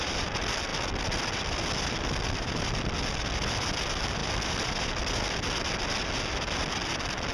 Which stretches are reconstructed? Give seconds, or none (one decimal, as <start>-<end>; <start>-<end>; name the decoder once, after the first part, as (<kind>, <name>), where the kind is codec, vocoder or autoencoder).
none